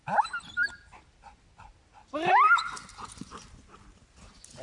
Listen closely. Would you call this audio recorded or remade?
recorded